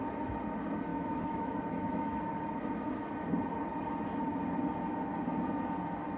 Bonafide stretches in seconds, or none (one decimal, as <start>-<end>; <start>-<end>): 0.0-0.9; 2.2-6.2